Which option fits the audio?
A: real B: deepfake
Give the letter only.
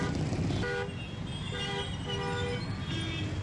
A